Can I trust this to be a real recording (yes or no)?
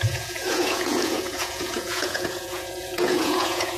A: no